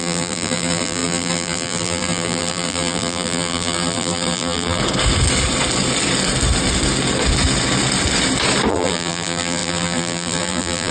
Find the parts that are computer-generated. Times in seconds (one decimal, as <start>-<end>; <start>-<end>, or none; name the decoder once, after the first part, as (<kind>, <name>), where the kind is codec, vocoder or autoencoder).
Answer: 0.0-4.8 (vocoder, BigVGAN v2); 8.7-10.9